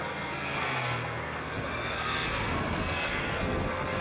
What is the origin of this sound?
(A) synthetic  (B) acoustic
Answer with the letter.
A